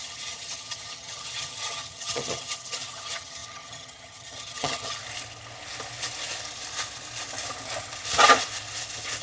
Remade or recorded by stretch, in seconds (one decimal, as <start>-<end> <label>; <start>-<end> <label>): 0.0-5.0 remade; 5.0-9.2 recorded